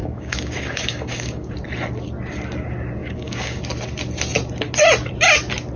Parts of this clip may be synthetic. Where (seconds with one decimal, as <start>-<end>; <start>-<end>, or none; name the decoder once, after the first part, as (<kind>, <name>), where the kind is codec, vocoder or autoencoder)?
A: 0.0-1.5 (codec, DAC); 3.0-3.6